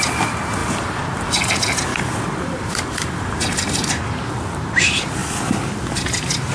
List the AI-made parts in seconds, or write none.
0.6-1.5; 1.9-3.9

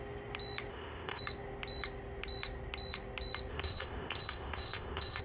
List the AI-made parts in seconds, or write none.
0.7-1.2; 3.5-5.2

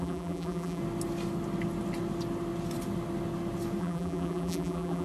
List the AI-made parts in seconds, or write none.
0.0-0.8; 3.8-5.0